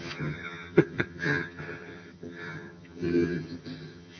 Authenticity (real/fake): fake